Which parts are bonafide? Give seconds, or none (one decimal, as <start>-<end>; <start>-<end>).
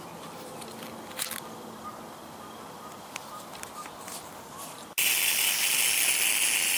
0.0-6.8